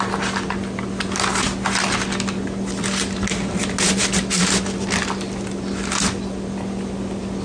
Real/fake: real